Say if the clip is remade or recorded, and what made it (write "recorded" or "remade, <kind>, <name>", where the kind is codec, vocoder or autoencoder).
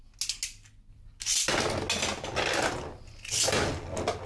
recorded